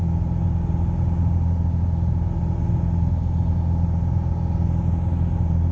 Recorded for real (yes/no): yes